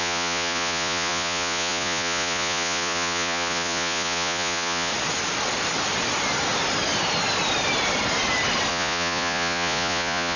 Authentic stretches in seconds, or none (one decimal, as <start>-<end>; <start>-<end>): 4.9-8.7